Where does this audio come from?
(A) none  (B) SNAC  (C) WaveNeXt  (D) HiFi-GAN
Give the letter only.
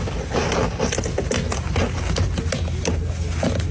A